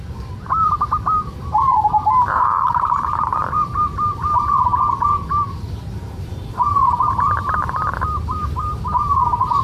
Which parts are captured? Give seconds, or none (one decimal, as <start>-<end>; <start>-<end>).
4.7-5.8